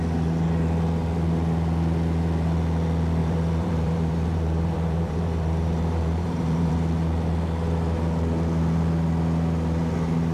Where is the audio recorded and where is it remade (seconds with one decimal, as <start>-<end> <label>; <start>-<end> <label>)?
0.0-3.2 recorded; 3.2-6.7 remade; 6.7-10.3 recorded